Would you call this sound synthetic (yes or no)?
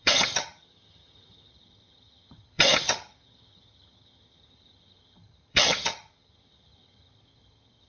yes